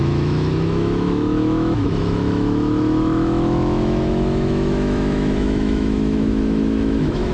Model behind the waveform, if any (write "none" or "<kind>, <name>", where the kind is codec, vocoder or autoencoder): autoencoder, DAC-VAE